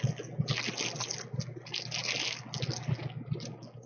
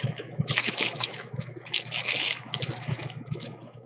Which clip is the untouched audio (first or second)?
first